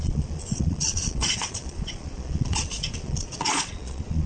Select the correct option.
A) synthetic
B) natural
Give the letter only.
A